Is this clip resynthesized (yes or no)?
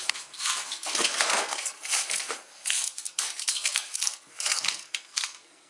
yes